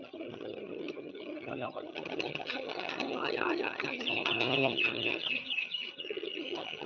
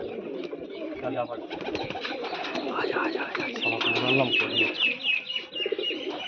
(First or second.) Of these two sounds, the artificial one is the first